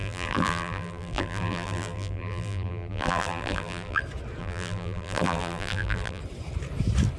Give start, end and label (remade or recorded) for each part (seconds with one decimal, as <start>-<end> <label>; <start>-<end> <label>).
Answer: 0.0-4.0 remade; 4.0-4.4 recorded; 4.4-6.2 remade; 6.2-7.2 recorded

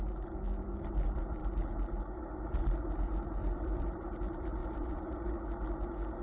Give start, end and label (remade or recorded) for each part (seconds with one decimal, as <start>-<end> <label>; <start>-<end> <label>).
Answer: 0.0-3.4 recorded; 3.4-4.1 remade; 4.1-4.6 recorded; 4.6-5.3 remade; 5.3-6.2 recorded

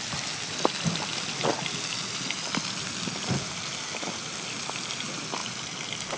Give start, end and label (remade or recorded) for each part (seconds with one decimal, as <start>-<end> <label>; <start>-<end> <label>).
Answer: 0.0-6.2 recorded

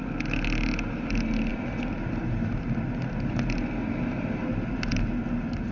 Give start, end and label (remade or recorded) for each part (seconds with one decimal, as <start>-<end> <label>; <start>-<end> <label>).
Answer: 0.0-5.7 recorded